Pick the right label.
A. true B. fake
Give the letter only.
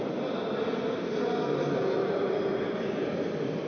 A